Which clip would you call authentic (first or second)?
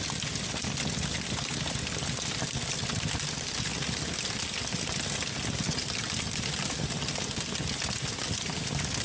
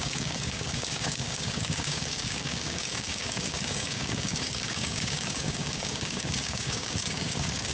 first